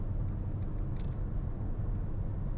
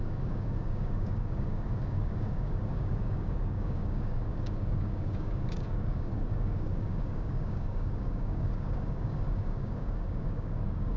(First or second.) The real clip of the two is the first